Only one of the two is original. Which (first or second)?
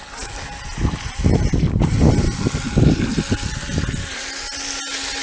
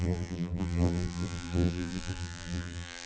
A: first